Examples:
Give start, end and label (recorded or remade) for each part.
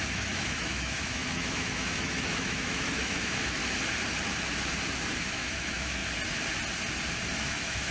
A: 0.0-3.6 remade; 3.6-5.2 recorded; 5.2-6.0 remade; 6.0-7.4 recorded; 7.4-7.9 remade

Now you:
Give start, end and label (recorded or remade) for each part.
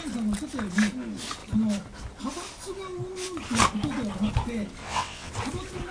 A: 0.0-4.8 recorded; 4.8-5.3 remade; 5.3-5.9 recorded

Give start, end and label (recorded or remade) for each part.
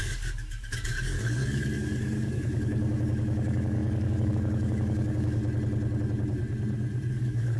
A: 0.0-5.4 remade; 5.4-7.1 recorded; 7.1-7.6 remade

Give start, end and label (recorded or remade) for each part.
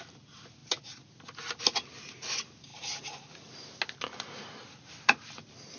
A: 0.0-0.6 remade; 0.6-1.6 recorded; 1.6-2.7 remade; 2.7-5.0 recorded; 5.0-5.8 remade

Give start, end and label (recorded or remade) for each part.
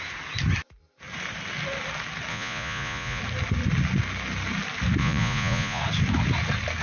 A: 0.0-2.3 recorded; 2.3-3.2 remade; 3.2-5.0 recorded; 5.0-5.8 remade; 5.8-6.8 recorded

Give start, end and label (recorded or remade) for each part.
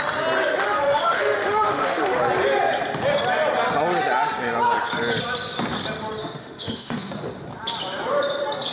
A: 0.0-0.6 recorded; 0.6-2.2 remade; 2.2-6.2 recorded; 6.2-7.1 remade; 7.1-8.7 recorded